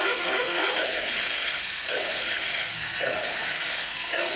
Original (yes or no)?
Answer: no